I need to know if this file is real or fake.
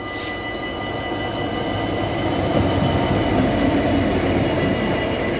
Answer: real